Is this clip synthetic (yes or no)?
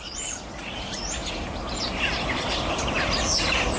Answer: no